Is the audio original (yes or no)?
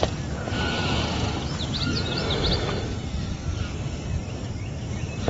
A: yes